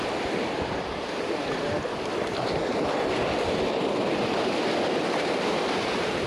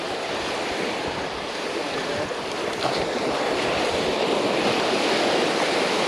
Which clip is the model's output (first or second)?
second